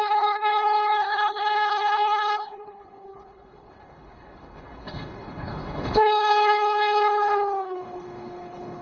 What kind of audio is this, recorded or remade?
remade